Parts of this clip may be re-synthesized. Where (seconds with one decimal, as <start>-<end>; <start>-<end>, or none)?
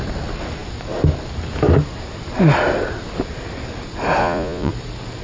4.2-4.7